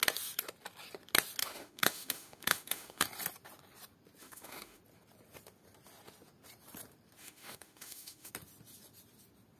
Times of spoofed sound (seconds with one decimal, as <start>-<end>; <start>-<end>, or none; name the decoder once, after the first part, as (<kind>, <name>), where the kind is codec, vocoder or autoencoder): 1.4-3.0 (autoencoder, DAC-VAE); 4.2-4.8; 7.2-8.3